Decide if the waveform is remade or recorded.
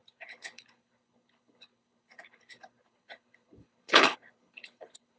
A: remade